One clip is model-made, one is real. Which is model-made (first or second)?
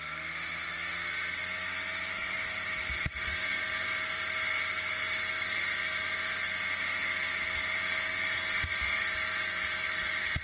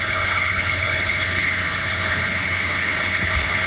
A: second